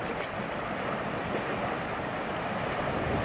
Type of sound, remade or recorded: recorded